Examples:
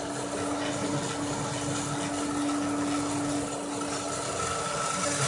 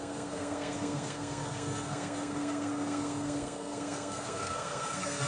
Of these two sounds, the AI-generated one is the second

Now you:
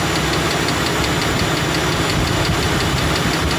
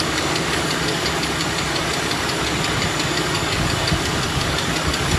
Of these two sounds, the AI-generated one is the second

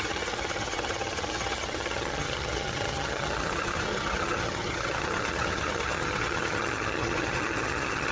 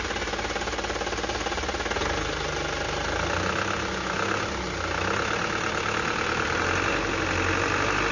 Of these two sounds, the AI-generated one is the first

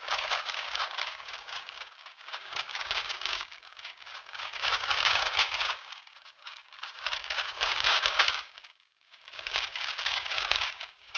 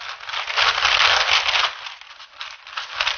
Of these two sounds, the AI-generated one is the first